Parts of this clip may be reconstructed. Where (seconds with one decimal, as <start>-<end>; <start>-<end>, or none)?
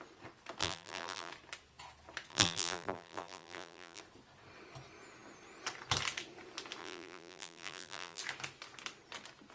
0.6-1.3; 2.3-4.0; 6.8-8.2